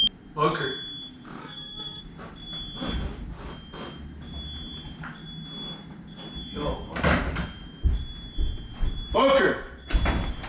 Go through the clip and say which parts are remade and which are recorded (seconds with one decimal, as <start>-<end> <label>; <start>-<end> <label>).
0.0-1.4 recorded; 1.4-2.0 remade; 2.0-10.5 recorded